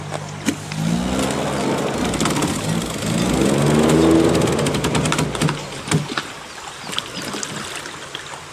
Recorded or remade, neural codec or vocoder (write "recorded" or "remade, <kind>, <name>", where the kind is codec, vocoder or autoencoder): recorded